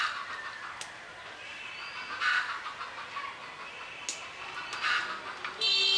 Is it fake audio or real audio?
real